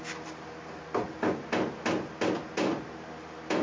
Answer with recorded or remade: recorded